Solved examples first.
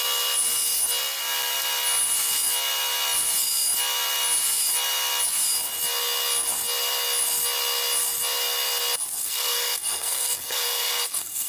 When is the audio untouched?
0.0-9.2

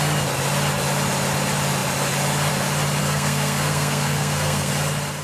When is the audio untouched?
0.0-3.0; 4.7-5.2